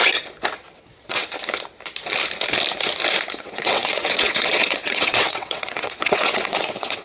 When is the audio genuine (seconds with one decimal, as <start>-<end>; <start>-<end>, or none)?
0.0-0.7; 1.2-3.4